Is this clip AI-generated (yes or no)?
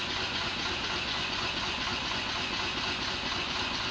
yes